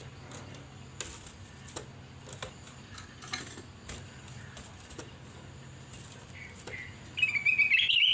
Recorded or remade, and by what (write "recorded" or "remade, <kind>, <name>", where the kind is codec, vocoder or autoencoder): recorded